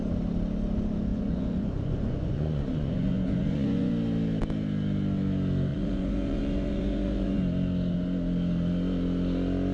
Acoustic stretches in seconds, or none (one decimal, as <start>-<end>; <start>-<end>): 0.0-1.1; 3.9-5.7; 7.4-9.7